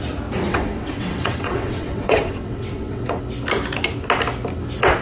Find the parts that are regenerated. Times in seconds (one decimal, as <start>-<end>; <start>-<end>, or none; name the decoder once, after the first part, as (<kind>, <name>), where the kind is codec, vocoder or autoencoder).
0.5-3.2 (vocoder, WaveNeXt)